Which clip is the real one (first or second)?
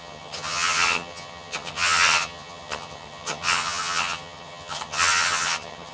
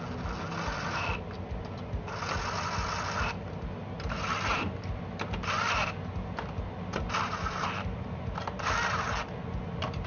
second